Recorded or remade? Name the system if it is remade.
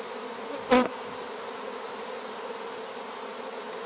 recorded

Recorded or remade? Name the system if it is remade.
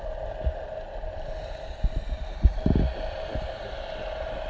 recorded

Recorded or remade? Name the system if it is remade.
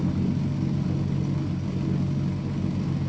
recorded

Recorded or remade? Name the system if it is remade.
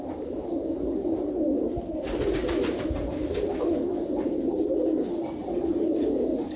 recorded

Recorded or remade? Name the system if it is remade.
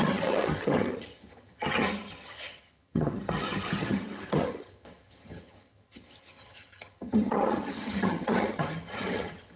remade, vocoder, HiFi-GAN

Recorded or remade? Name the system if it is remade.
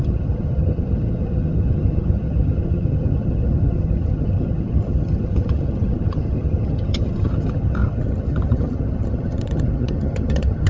remade, vocoder, HiFi-GAN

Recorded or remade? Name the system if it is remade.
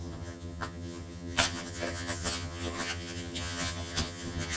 remade, vocoder, HiFi-GAN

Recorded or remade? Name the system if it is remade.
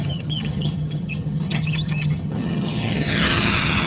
remade, vocoder, HiFi-GAN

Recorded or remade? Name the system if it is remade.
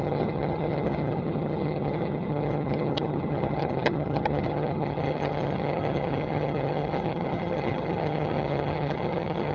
remade, vocoder, HiFi-GAN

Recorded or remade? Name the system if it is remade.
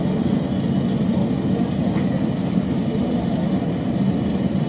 recorded